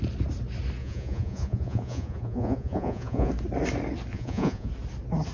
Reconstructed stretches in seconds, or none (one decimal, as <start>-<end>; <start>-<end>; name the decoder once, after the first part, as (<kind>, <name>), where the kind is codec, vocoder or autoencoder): 0.8-3.3 (vocoder, Vocos); 4.1-4.7